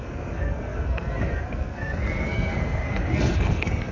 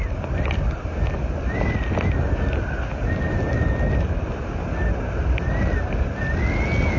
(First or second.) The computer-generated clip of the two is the first